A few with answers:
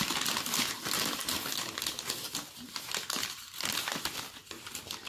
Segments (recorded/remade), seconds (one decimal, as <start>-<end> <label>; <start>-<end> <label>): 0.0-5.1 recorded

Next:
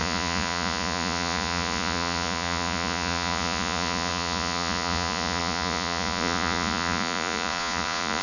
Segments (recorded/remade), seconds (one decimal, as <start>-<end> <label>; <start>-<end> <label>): 0.0-8.2 remade

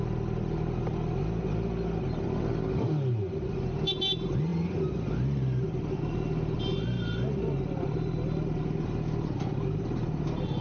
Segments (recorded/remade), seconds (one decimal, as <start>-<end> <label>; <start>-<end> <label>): 0.0-10.6 recorded

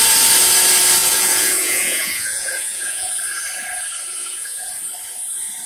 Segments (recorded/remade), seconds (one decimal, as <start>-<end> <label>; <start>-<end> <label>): 0.0-1.0 recorded; 1.0-3.1 remade; 3.1-4.2 recorded; 4.2-4.7 remade; 4.7-5.7 recorded

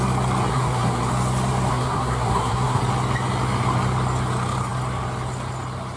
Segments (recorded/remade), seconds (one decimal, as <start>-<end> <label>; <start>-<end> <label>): 0.0-0.5 recorded; 0.5-1.1 remade; 1.1-1.7 recorded; 1.7-2.8 remade; 2.8-6.0 recorded